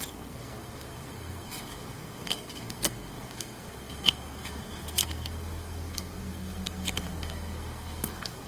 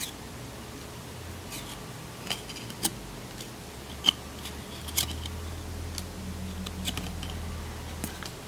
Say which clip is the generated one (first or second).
first